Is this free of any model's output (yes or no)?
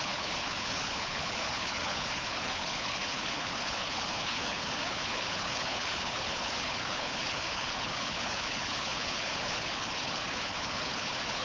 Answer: no